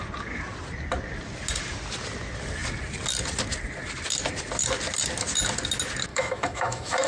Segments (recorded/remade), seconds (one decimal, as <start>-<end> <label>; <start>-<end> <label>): 0.0-6.1 recorded; 6.1-7.1 remade